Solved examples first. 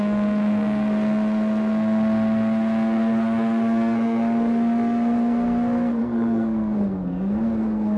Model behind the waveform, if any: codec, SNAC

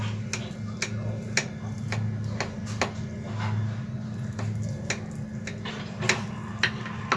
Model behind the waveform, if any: none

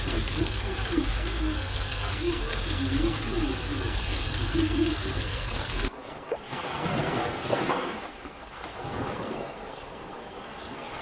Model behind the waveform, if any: codec, SNAC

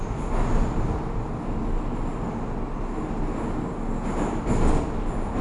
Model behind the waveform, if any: none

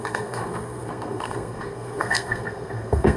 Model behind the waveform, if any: codec, SNAC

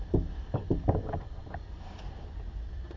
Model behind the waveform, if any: none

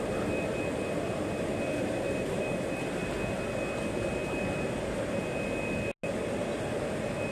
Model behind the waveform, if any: none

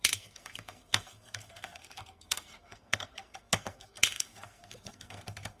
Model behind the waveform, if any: codec, SNAC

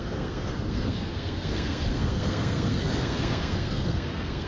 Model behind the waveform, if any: codec, SNAC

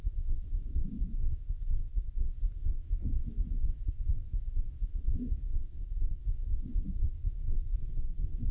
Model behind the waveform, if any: codec, SNAC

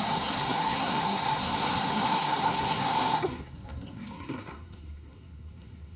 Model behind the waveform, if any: codec, SNAC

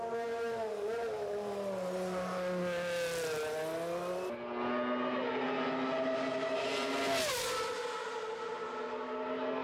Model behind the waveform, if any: none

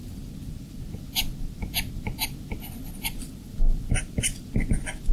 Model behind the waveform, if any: none